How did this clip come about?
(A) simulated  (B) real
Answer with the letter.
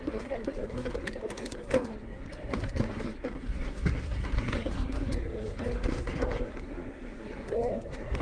A